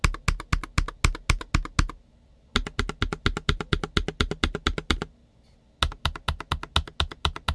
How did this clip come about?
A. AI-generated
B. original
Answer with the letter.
B